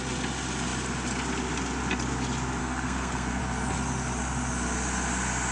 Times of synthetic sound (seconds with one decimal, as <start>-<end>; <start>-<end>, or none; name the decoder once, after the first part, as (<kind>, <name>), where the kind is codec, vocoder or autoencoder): 2.6-3.4 (codec, SNAC)